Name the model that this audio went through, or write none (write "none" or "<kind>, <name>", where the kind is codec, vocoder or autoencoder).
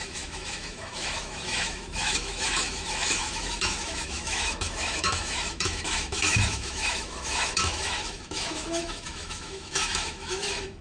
autoencoder, DAC-VAE